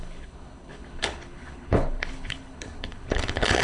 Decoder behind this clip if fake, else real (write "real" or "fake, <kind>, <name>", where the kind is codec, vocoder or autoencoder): fake, codec, HILCodec